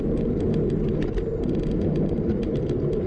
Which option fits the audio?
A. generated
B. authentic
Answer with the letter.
B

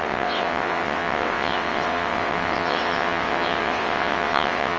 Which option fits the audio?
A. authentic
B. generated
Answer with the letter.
B